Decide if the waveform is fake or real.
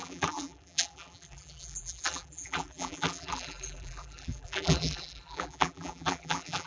fake